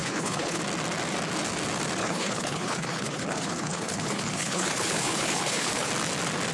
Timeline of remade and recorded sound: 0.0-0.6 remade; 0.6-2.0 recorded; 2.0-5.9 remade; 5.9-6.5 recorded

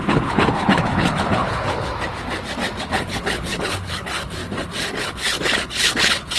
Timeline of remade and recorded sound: 0.0-1.9 remade; 1.9-2.8 recorded; 2.8-4.4 remade; 4.4-5.0 recorded; 5.0-6.4 remade